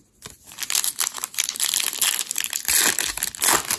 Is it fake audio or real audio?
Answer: real